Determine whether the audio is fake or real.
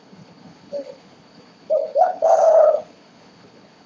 fake